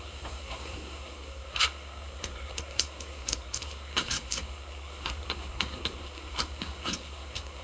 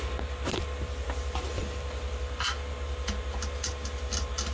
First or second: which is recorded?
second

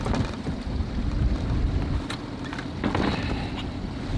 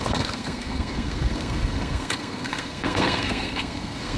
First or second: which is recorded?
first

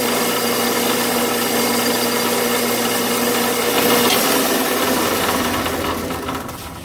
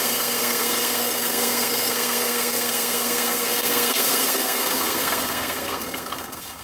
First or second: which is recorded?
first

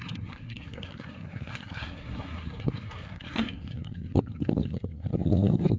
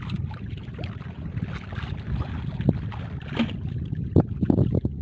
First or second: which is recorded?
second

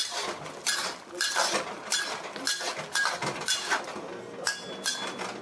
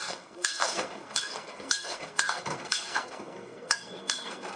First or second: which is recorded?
first